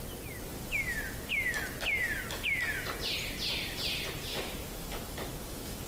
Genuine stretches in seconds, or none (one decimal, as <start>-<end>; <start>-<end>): 0.0-4.3